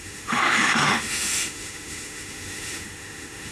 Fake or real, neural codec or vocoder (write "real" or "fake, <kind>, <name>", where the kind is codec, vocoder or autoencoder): fake, autoencoder, DAC-VAE